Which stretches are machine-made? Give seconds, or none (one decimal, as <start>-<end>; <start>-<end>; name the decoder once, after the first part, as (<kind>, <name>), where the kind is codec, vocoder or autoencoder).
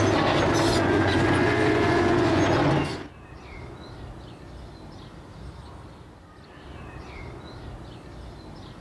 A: 0.7-2.7 (vocoder, Vocos)